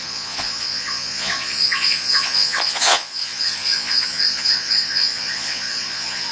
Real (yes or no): no